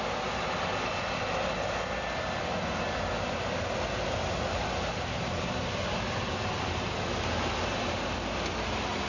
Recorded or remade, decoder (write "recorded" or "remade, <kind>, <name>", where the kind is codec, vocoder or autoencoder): recorded